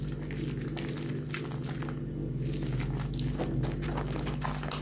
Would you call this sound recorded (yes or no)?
yes